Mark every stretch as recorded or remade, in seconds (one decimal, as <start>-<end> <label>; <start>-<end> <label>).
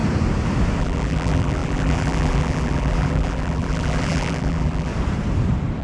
0.0-0.8 recorded; 0.8-4.9 remade; 4.9-5.8 recorded